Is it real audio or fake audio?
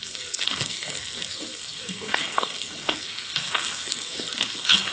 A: fake